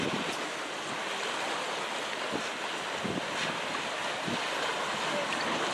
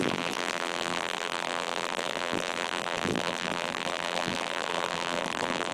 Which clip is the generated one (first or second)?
second